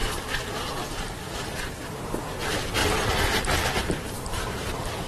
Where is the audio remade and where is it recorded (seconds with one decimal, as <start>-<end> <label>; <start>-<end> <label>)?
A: 0.0-2.8 remade; 2.8-3.8 recorded; 3.8-5.1 remade